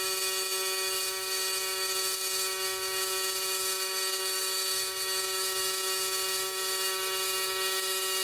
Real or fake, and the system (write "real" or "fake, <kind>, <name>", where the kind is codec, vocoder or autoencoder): fake, autoencoder, DAC-VAE